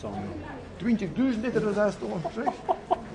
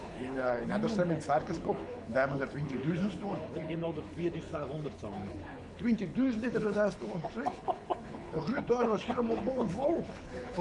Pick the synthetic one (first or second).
second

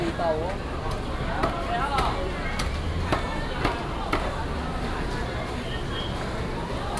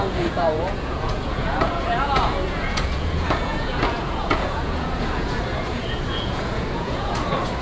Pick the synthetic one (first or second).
second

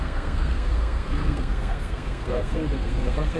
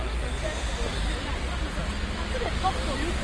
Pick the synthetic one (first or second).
first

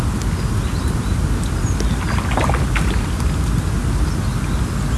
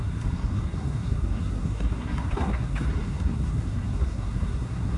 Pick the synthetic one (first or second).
second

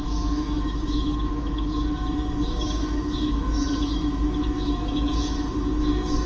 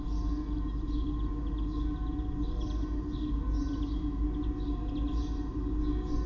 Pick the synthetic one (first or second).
first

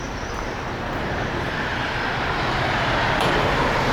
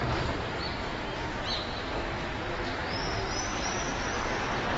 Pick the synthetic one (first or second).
first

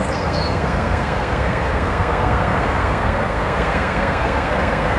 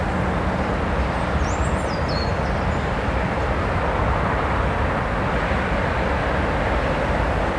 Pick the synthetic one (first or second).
first